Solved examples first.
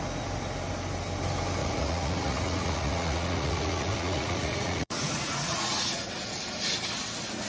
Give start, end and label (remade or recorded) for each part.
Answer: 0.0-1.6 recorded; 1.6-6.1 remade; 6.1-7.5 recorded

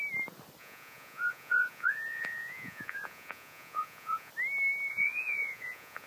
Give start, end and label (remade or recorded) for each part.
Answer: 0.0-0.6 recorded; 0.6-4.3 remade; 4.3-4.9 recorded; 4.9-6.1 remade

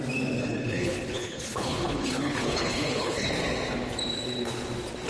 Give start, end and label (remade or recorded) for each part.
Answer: 0.0-0.4 recorded; 0.4-3.3 remade; 3.3-5.1 recorded

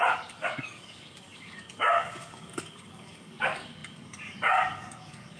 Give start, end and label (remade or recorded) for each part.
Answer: 0.0-5.4 remade

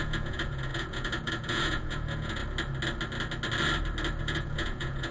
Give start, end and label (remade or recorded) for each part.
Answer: 0.0-2.4 remade; 2.4-4.2 recorded; 4.2-5.1 remade

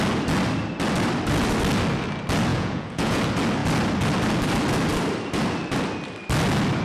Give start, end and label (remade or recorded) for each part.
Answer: 0.0-2.5 recorded; 2.5-3.2 remade; 3.2-6.8 recorded